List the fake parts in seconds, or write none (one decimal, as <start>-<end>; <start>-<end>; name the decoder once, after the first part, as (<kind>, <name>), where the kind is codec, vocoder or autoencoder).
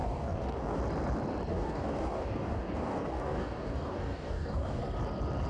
0.0-0.8 (codec, DAC); 1.5-4.8